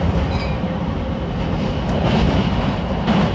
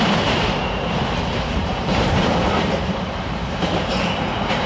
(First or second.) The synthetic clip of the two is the second